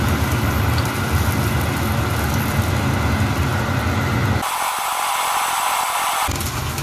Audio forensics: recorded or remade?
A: recorded